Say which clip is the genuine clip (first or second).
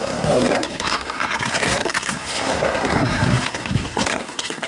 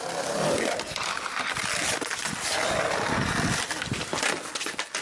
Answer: second